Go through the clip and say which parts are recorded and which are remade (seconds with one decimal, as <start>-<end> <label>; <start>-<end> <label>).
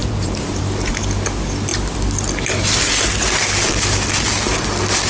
0.0-0.6 remade; 0.6-5.1 recorded